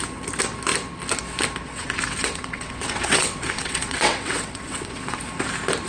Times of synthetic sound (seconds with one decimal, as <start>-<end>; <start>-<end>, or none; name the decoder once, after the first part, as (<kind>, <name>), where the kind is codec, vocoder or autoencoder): 1.7-5.2 (vocoder, WaveNeXt)